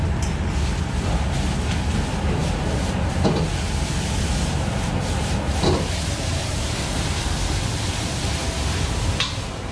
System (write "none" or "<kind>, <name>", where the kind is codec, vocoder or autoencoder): none